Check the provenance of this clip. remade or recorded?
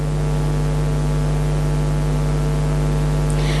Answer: recorded